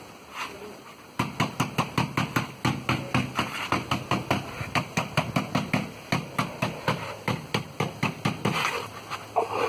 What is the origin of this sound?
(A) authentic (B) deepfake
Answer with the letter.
A